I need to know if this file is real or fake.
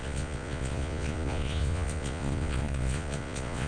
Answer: fake